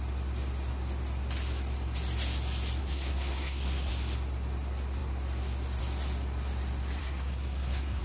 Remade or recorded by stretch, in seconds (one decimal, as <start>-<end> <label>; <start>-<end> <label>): 0.0-2.8 recorded; 2.8-3.9 remade; 3.9-7.0 recorded; 7.0-8.0 remade